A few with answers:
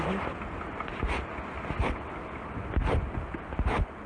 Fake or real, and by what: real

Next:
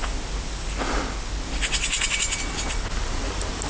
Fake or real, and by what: real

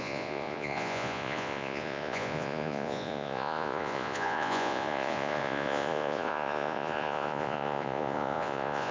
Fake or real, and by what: fake, vocoder, Vocos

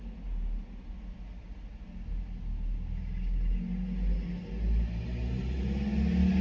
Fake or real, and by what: real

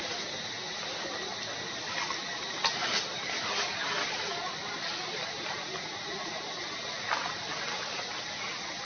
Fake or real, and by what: real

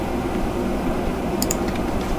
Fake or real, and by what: fake, vocoder, BigVGAN v2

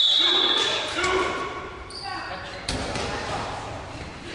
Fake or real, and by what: fake, vocoder, BigVGAN v2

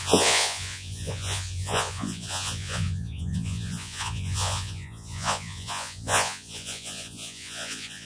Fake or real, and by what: fake, vocoder, Vocos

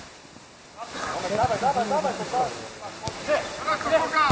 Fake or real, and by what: real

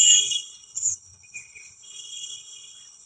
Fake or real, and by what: fake, codec, HILCodec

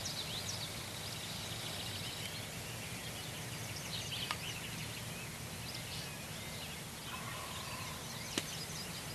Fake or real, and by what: real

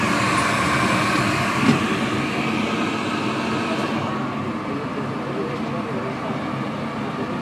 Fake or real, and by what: real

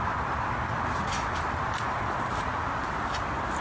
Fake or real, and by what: real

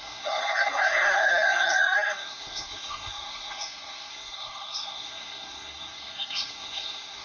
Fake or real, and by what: fake, codec, SNAC